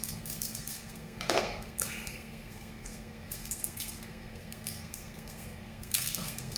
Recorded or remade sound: remade